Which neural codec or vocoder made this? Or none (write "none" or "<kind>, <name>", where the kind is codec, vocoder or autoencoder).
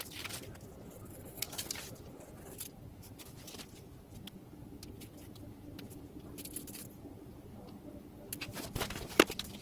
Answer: none